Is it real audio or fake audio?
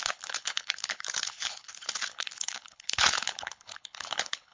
fake